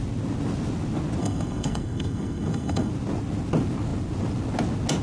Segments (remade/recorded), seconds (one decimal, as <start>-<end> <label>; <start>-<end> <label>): 0.0-1.2 recorded; 1.2-2.9 remade; 2.9-5.0 recorded